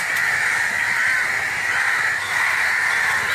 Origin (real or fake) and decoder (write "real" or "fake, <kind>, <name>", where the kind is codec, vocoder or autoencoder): real